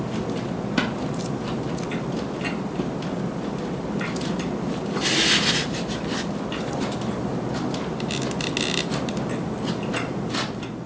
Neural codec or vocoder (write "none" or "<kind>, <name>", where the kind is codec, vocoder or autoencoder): none